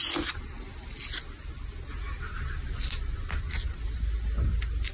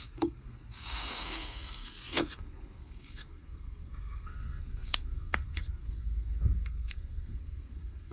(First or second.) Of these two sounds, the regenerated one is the second